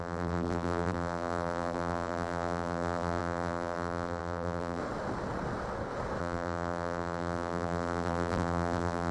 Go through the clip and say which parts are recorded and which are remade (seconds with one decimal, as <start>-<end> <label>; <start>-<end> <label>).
0.0-4.8 remade; 4.8-6.2 recorded; 6.2-9.1 remade